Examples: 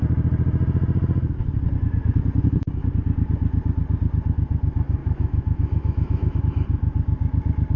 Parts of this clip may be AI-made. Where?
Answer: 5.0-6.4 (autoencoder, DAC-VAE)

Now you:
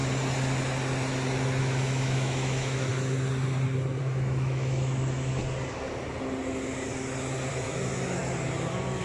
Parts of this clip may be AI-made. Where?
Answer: 1.6-2.9 (autoencoder, DAC-VAE); 4.0-5.4; 7.5-8.2

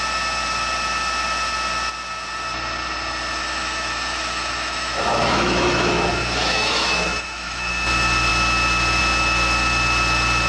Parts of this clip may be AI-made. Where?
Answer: 3.4-7.7 (autoencoder, DAC-VAE)

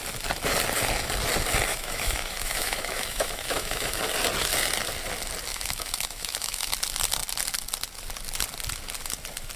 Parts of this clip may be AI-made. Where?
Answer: 1.7-4.0 (autoencoder, DAC-VAE); 5.5-6.7

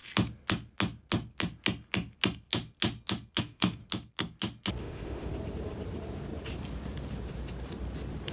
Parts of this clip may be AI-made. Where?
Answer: 3.4-3.8 (autoencoder, DAC-VAE); 4.8-5.3

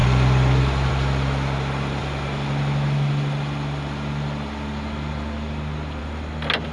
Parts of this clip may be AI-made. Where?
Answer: none

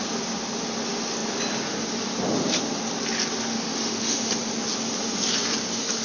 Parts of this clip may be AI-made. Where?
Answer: 3.5-4.3 (autoencoder, DAC-VAE)

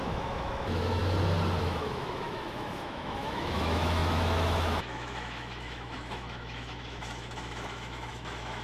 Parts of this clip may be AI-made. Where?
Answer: 0.0-1.0 (autoencoder, DAC-VAE); 1.6-8.6